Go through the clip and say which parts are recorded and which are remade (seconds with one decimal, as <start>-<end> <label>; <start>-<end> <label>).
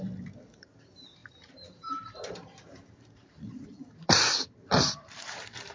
0.0-5.7 remade